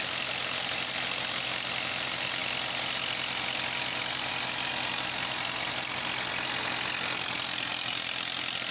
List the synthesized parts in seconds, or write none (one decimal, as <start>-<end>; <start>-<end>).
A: none